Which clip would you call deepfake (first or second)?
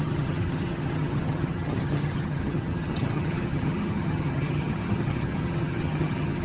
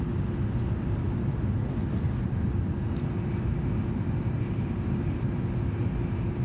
first